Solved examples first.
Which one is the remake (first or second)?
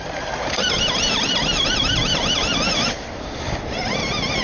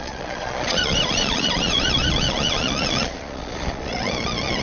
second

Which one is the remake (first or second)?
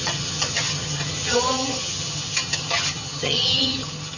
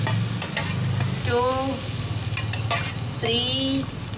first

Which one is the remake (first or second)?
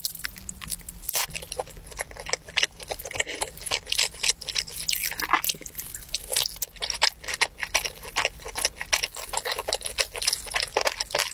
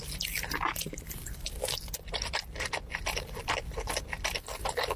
second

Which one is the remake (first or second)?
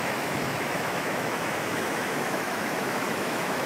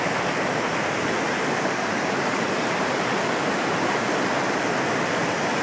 first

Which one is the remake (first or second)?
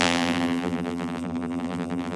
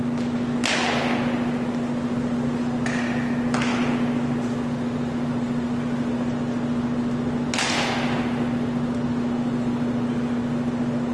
first